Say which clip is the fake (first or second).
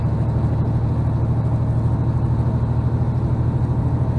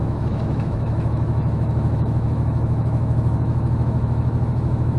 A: second